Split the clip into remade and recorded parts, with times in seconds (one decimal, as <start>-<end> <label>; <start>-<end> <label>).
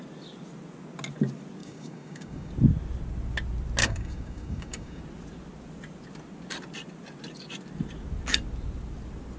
0.0-1.6 recorded; 1.6-2.5 remade; 2.5-3.8 recorded; 3.8-5.0 remade; 5.0-9.4 recorded